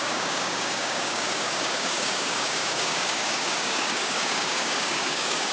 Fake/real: fake